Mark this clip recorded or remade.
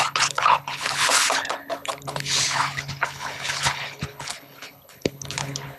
remade